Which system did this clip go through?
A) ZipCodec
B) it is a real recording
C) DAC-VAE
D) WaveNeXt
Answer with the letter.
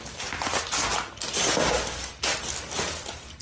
B